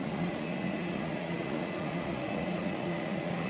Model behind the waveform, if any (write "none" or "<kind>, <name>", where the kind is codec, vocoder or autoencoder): vocoder, Vocos